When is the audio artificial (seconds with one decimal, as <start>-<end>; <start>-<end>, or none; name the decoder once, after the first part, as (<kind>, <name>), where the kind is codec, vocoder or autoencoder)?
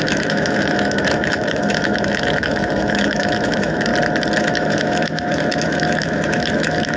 0.0-3.9 (autoencoder, DAC-VAE); 4.4-7.0